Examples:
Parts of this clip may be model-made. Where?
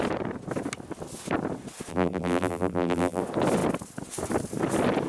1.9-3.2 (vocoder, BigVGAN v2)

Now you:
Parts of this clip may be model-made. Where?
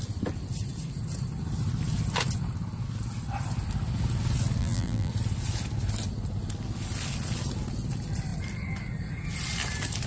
4.6-5.1 (vocoder, BigVGAN v2)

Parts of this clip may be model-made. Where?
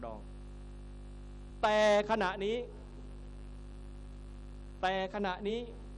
2.8-5.5 (vocoder, BigVGAN v2)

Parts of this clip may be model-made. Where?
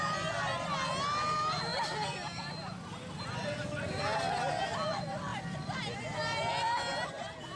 5.3-5.8 (vocoder, BigVGAN v2)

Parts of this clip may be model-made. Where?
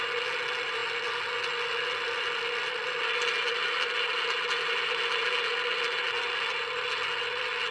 none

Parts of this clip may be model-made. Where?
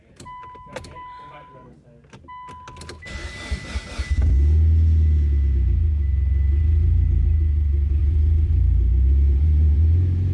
0.0-1.6 (vocoder, BigVGAN v2); 6.6-10.3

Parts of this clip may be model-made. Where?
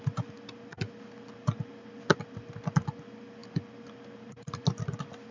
none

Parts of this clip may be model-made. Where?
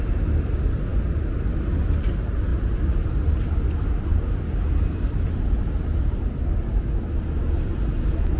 none